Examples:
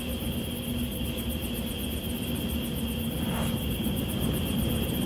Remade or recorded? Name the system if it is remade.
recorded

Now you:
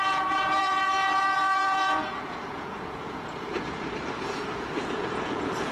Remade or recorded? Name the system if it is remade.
remade, vocoder, Vocos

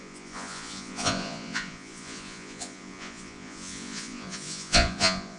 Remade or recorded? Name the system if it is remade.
remade, vocoder, Vocos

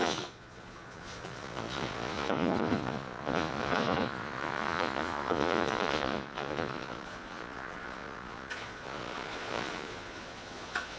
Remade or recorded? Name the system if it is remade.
remade, vocoder, Vocos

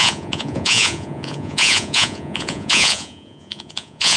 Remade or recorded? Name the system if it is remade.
remade, vocoder, Vocos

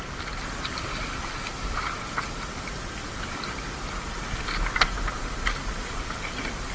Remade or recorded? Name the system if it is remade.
recorded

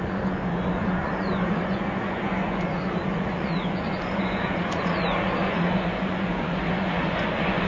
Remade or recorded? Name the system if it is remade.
remade, vocoder, Vocos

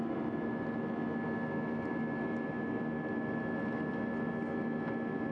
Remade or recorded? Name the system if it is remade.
recorded